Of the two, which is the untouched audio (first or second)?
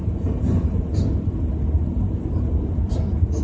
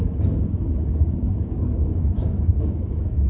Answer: first